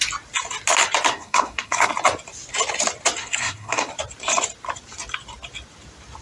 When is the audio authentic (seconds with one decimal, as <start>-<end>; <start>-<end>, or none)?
0.0-1.1; 1.9-3.2; 3.9-6.2

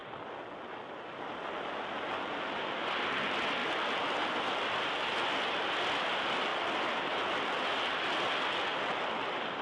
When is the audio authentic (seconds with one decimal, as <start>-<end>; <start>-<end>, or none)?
0.0-3.6; 5.1-6.5; 7.2-8.7